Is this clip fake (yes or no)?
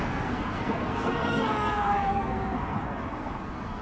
yes